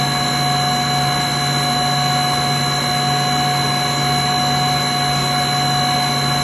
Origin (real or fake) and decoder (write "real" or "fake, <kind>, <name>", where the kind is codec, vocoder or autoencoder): real